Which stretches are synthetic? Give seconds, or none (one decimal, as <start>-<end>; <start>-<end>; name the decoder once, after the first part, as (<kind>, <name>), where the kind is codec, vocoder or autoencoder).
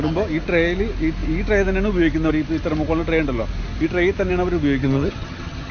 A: 4.8-5.7 (vocoder, HiFi-GAN)